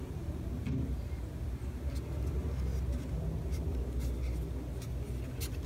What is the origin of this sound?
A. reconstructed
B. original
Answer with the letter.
B